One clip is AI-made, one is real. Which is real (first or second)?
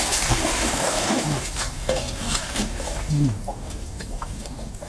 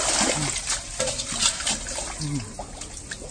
second